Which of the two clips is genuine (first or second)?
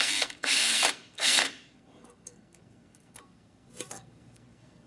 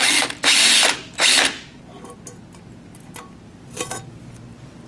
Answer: second